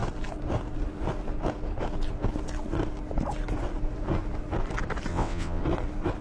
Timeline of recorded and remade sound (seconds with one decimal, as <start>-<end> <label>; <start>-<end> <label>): 0.0-5.1 recorded; 5.1-5.6 remade; 5.6-6.2 recorded